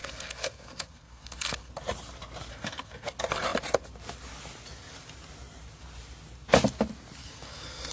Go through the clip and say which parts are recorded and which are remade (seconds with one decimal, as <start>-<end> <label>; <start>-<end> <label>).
0.0-1.7 remade; 1.7-2.5 recorded; 2.5-3.1 remade; 3.1-7.2 recorded; 7.2-7.9 remade